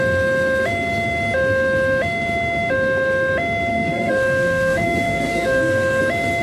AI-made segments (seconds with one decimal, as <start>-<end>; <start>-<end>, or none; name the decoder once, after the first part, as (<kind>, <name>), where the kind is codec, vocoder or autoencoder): 3.7-6.0 (codec, SNAC)